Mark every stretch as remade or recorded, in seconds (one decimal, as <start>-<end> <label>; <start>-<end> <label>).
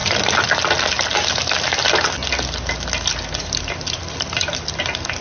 0.0-5.2 recorded